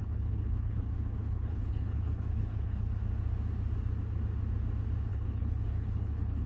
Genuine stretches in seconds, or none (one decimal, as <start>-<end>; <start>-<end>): 3.0-5.1